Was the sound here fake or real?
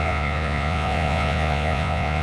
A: fake